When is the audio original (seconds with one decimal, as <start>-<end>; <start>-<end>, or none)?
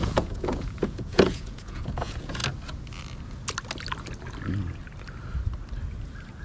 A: 2.4-6.4